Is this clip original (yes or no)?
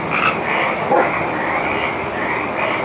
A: yes